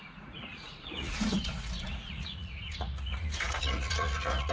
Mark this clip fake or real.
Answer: fake